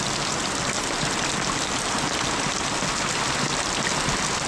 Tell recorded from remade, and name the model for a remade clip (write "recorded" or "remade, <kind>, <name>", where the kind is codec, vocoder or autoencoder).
recorded